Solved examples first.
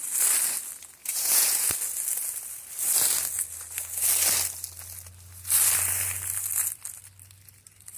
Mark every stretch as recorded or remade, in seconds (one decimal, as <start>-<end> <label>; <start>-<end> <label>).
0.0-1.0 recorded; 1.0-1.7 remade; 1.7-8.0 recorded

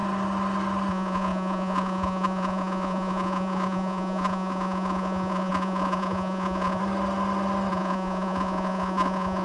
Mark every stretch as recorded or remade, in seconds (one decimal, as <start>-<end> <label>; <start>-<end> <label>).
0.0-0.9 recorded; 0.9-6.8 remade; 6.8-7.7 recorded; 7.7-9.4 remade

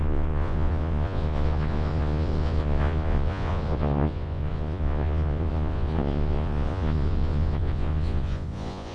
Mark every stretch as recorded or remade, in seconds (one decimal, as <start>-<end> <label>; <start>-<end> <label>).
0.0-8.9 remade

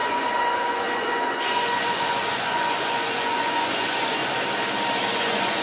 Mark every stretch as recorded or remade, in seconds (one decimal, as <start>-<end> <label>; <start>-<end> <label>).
0.0-4.2 remade; 4.2-5.1 recorded; 5.1-5.6 remade

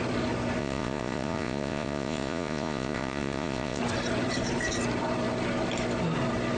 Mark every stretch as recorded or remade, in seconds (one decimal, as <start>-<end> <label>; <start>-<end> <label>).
0.0-0.6 recorded; 0.6-3.8 remade; 3.8-6.6 recorded